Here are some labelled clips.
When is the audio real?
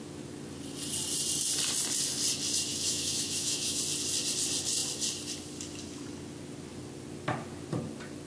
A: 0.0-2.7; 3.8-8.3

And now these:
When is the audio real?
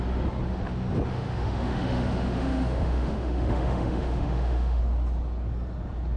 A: 0.0-1.1; 4.8-6.2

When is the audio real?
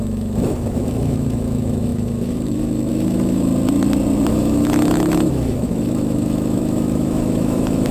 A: 3.5-4.3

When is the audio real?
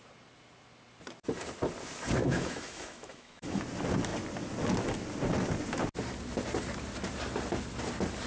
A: 0.0-2.2; 3.6-8.3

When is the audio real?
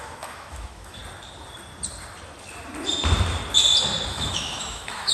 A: 1.0-4.1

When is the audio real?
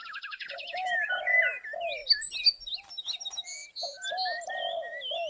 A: 1.1-5.3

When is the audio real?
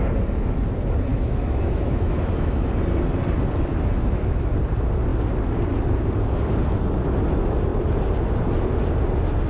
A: 0.0-1.1; 2.7-3.7; 4.5-9.5